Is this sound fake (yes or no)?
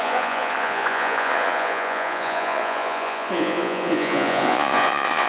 yes